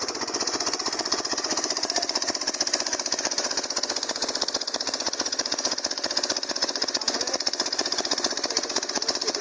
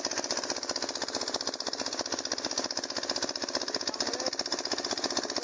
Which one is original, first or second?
second